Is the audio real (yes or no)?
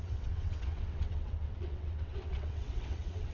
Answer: no